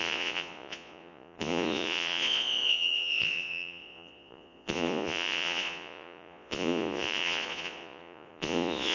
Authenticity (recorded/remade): remade